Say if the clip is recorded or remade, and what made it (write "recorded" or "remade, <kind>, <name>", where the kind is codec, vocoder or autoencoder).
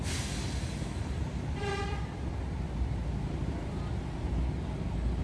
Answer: recorded